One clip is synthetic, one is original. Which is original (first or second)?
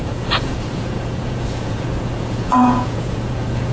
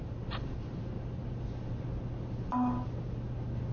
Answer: second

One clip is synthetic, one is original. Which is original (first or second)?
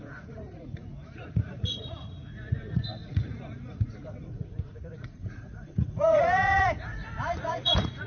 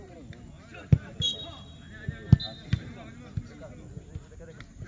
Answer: second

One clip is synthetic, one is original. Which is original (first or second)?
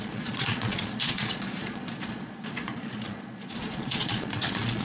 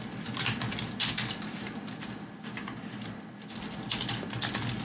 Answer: second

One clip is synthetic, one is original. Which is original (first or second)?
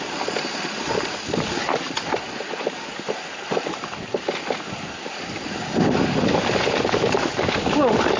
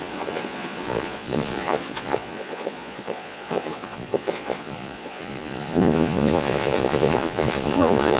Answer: first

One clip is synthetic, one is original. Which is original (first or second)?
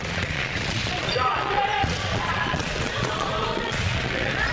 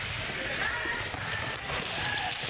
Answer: second